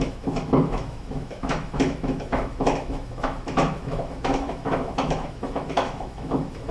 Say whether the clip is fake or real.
fake